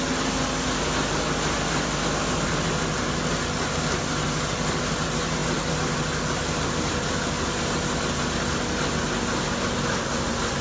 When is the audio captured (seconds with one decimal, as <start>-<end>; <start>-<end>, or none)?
0.0-10.6